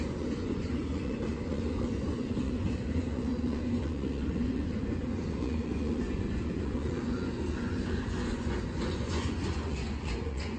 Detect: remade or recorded remade